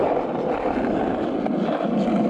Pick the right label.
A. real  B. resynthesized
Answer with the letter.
A